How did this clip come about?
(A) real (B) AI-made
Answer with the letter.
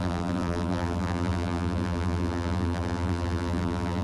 B